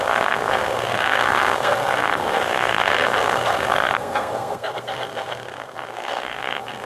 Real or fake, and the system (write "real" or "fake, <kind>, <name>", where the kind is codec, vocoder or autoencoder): fake, codec, SNAC